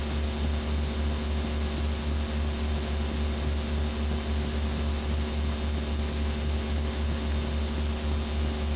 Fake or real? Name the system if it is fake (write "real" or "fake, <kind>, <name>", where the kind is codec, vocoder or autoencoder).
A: real